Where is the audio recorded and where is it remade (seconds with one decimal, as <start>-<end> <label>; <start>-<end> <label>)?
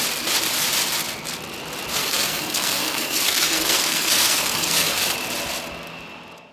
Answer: 0.0-2.0 recorded; 2.0-5.0 remade; 5.0-6.5 recorded